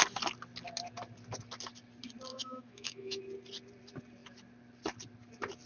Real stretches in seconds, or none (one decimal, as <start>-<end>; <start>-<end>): 0.0-2.3; 3.2-5.7